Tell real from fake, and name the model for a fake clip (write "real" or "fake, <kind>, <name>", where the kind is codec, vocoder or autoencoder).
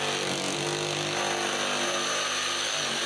real